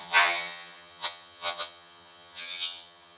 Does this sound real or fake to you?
fake